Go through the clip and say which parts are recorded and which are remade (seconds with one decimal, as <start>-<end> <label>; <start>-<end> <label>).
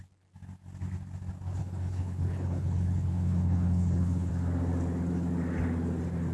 0.0-1.6 recorded; 1.6-4.3 remade; 4.3-6.3 recorded